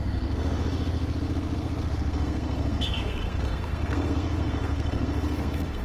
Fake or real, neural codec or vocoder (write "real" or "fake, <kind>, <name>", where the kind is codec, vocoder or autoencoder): fake, codec, SNAC